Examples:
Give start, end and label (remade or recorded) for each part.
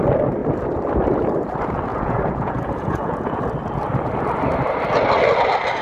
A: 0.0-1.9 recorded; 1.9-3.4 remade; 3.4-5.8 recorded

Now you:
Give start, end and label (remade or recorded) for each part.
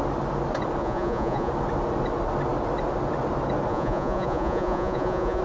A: 0.0-0.8 recorded; 0.8-1.5 remade; 1.5-3.7 recorded; 3.7-5.4 remade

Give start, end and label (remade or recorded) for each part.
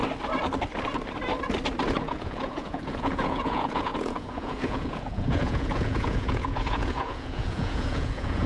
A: 0.0-2.0 recorded; 2.0-8.5 remade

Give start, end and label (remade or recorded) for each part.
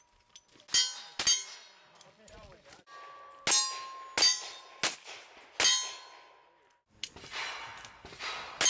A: 0.0-8.7 recorded